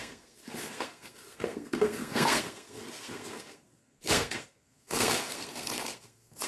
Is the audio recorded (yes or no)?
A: no